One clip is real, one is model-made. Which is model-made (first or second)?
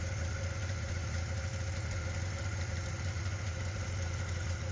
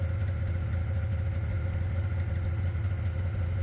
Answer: first